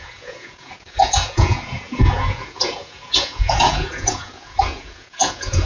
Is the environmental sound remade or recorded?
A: remade